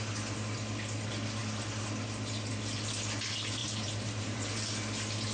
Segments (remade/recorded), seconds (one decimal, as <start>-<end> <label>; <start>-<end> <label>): 0.0-3.6 recorded; 3.6-4.7 remade; 4.7-5.3 recorded